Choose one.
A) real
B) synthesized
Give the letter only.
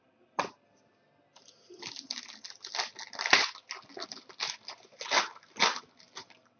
A